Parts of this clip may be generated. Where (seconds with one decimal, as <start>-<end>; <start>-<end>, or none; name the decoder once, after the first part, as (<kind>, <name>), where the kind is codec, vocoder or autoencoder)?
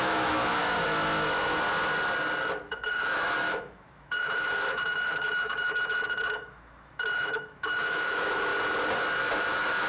0.0-0.6 (autoencoder, DAC-VAE); 2.7-8.5; 9.2-9.9